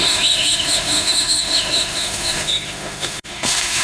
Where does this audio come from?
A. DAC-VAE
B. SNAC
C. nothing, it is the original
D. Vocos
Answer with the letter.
A